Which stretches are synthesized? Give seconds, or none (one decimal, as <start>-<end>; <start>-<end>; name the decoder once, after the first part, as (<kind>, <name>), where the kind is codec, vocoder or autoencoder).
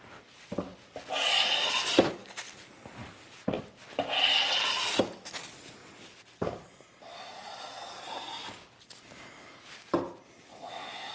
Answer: 10.5-11.1 (vocoder, Vocos)